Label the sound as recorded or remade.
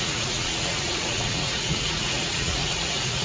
remade